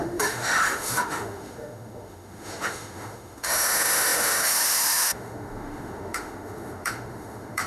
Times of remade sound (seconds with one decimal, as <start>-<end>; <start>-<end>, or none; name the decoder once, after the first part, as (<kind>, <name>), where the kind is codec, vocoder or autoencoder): 0.0-7.7 (autoencoder, DAC-VAE)